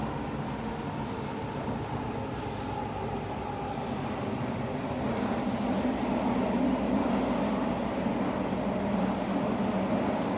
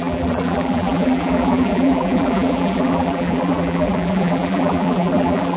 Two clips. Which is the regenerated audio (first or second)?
second